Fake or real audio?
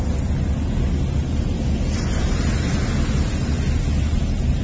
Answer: real